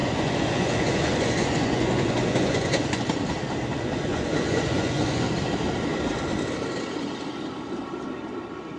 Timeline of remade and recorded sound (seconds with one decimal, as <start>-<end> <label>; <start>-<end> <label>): 0.0-3.0 remade; 3.0-3.7 recorded; 3.7-5.3 remade; 5.3-8.8 recorded